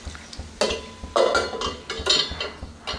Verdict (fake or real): real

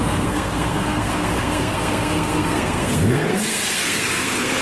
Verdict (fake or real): fake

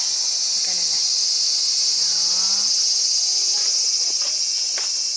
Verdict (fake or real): real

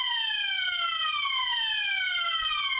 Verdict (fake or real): real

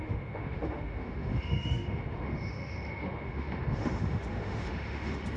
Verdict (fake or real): fake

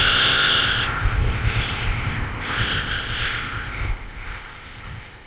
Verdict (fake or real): fake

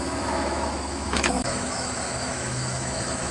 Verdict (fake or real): fake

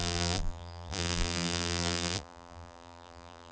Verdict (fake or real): fake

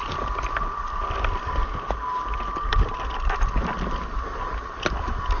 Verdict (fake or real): real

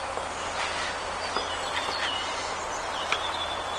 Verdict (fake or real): real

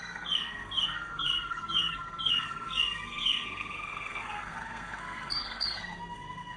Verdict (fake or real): fake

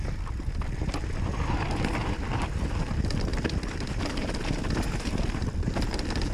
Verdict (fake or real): real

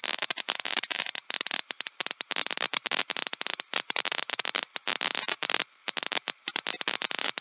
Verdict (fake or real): fake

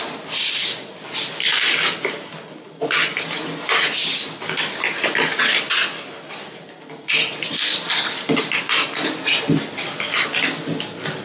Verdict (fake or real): real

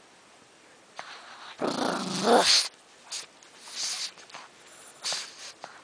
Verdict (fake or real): real